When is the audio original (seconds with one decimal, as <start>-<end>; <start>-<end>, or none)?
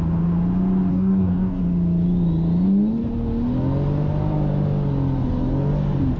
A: 0.0-0.9; 1.6-6.2